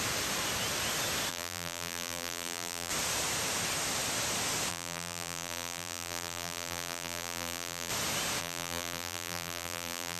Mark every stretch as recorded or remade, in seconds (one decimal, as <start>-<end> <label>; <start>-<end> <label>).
0.0-1.3 recorded; 1.3-2.9 remade; 2.9-4.7 recorded; 4.7-7.9 remade; 7.9-8.4 recorded; 8.4-10.2 remade